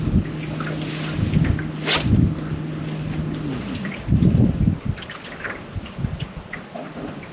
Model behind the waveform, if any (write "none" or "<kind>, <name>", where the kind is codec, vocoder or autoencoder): none